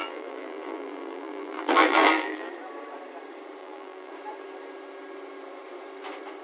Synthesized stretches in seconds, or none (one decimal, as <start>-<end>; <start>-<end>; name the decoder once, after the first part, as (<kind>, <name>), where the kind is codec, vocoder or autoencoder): 0.0-2.5 (vocoder, BigVGAN v2); 3.6-4.1